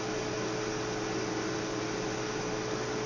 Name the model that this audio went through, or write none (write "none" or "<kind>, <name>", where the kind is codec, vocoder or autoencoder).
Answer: none